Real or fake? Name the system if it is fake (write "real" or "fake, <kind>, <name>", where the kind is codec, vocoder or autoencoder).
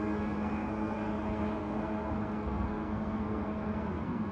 fake, codec, SNAC